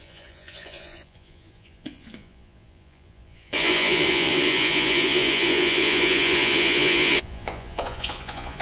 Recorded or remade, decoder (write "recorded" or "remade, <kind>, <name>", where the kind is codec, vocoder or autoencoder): remade, vocoder, Vocos